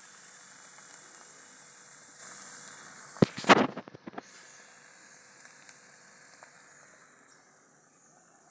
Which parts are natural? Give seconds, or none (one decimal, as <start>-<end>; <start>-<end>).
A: 0.0-8.5